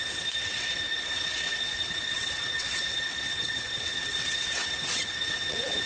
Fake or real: fake